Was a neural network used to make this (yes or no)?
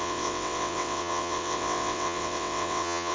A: yes